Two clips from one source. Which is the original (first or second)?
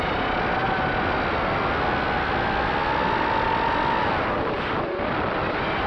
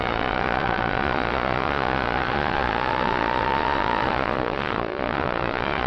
first